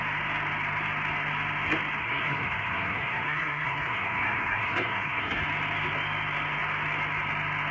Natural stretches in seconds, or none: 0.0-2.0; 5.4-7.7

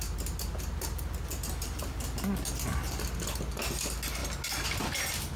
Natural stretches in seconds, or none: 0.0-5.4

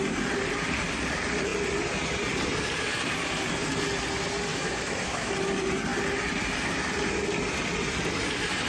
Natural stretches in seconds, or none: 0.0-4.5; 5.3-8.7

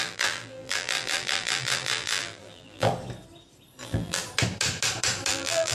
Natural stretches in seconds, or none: 2.9-3.8; 4.2-5.3

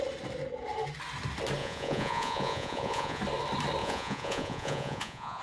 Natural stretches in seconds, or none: 0.0-1.6; 3.2-3.8

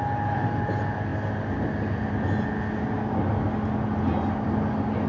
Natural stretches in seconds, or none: 0.0-5.1

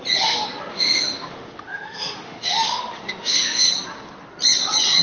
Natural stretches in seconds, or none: 0.0-0.7; 3.7-5.0

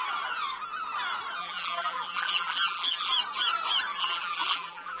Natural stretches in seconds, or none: 0.0-1.4; 3.1-3.9